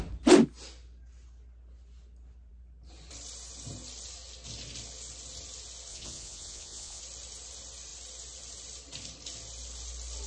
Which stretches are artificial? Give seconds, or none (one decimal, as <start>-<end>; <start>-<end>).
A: 5.9-7.0